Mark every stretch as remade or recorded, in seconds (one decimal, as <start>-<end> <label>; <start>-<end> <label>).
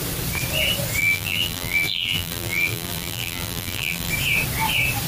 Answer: 0.0-1.0 recorded; 1.0-4.1 remade; 4.1-5.1 recorded